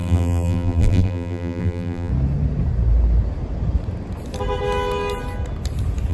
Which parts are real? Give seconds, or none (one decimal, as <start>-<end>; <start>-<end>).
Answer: 2.1-6.1